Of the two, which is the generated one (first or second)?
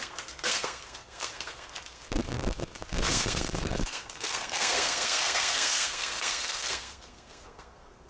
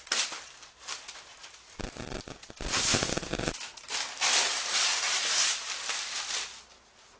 first